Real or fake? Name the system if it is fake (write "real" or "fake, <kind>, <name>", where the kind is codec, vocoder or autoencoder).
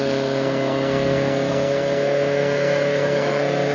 fake, codec, SNAC